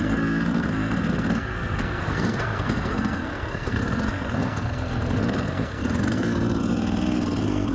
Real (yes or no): no